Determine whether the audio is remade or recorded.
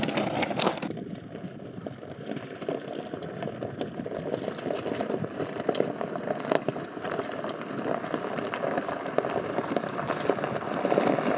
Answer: recorded